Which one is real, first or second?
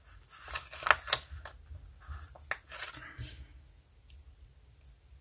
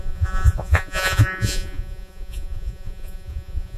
first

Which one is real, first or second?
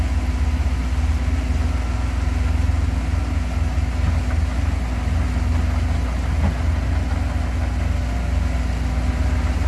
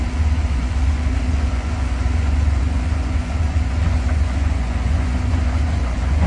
first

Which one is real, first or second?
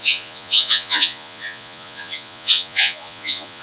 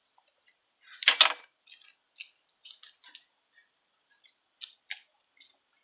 second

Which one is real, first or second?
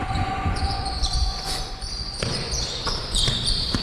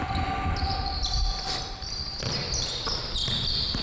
second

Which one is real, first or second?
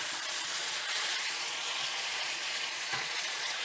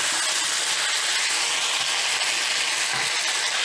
second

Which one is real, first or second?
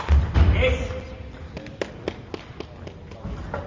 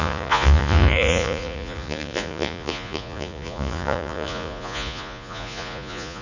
first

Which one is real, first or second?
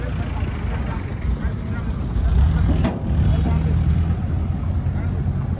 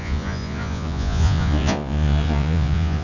first